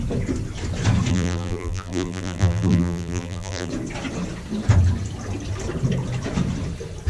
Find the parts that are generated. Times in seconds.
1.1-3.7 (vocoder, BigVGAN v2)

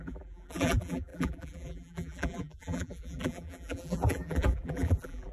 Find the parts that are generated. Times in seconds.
0.0-5.3 (vocoder, BigVGAN v2)